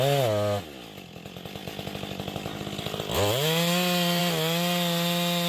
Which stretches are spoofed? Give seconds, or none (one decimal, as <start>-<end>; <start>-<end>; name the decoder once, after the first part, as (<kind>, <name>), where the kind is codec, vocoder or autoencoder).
none